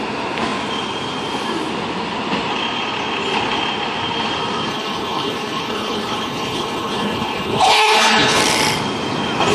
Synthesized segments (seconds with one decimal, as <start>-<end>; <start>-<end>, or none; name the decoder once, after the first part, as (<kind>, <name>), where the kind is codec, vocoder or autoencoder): 4.7-8.4 (codec, HILCodec)

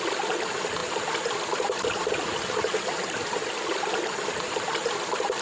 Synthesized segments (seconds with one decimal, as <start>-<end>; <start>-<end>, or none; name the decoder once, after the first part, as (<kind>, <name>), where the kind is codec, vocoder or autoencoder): none